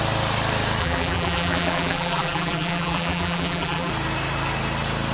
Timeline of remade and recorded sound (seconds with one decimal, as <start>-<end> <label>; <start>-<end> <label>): 0.0-0.8 recorded; 0.8-3.9 remade; 3.9-5.1 recorded